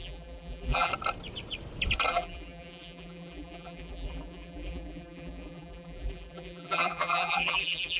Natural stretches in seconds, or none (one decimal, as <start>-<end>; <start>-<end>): 0.9-2.1